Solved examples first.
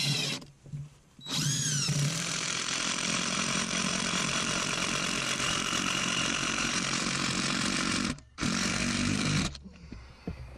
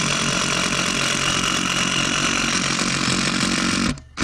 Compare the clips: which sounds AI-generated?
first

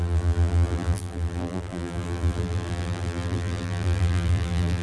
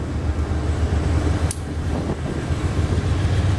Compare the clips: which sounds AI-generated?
first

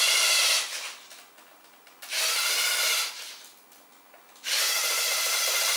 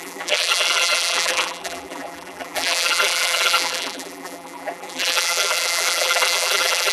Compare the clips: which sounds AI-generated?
second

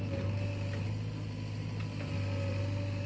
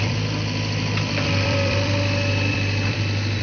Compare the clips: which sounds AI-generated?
second